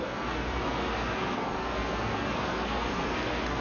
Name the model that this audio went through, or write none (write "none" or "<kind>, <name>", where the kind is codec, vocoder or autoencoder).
codec, SNAC